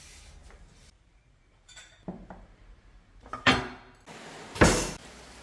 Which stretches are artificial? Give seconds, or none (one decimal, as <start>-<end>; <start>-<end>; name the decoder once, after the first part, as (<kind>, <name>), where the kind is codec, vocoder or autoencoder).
0.4-3.6 (vocoder, BigVGAN v2)